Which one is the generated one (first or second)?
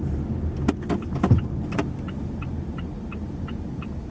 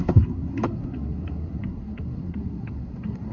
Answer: second